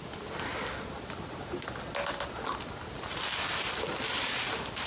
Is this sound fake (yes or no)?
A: no